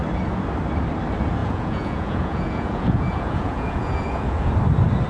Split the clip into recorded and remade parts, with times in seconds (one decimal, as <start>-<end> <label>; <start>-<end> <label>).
0.0-1.4 recorded; 1.4-4.5 remade; 4.5-5.1 recorded

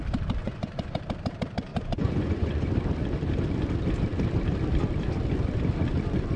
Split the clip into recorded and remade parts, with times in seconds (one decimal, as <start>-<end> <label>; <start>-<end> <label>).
0.0-0.4 recorded; 0.4-1.0 remade; 1.0-1.7 recorded; 1.7-2.7 remade; 2.7-6.4 recorded

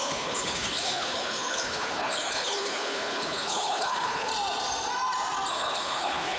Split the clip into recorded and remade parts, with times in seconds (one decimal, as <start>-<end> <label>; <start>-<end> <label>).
0.0-4.3 remade; 4.3-5.5 recorded; 5.5-6.4 remade

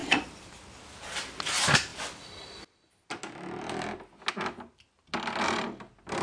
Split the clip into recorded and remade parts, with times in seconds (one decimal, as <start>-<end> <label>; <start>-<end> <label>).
0.0-0.8 remade; 0.8-6.2 recorded

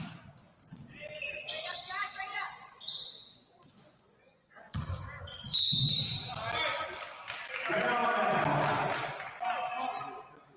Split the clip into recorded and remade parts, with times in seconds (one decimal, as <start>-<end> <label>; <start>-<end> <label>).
0.0-2.3 recorded; 2.3-6.0 remade; 6.0-10.6 recorded

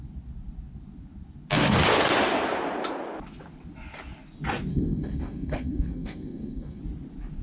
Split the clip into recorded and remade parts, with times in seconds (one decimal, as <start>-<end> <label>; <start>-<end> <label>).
0.0-4.7 recorded; 4.7-6.8 remade; 6.8-7.4 recorded

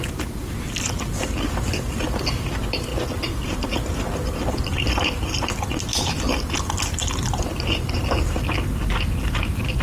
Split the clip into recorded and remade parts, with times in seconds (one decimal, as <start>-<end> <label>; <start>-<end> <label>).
0.0-9.8 recorded

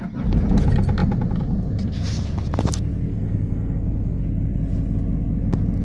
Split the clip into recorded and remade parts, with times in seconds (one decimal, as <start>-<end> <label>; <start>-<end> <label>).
0.0-3.1 recorded; 3.1-4.2 remade; 4.2-5.8 recorded